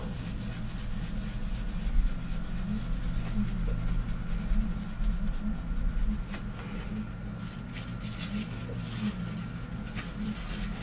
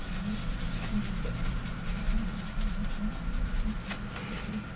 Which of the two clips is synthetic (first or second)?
second